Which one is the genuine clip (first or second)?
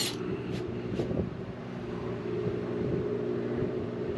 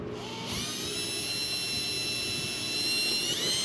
second